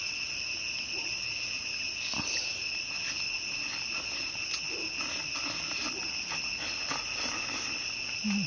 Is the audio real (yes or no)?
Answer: yes